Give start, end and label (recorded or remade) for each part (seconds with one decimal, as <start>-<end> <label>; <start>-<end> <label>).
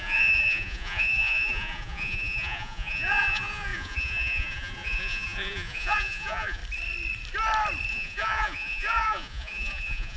0.0-6.6 remade; 6.6-7.9 recorded; 7.9-10.2 remade